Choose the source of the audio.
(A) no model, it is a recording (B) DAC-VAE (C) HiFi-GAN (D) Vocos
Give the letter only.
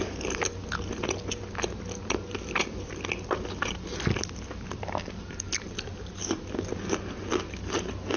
A